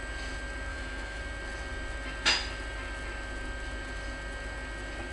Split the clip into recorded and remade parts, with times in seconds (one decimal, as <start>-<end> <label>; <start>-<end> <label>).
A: 0.0-0.7 recorded; 0.7-1.2 remade; 1.2-5.1 recorded